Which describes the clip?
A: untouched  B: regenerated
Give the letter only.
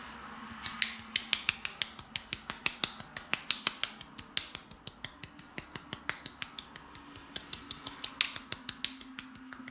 A